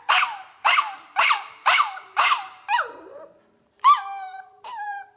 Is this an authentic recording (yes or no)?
no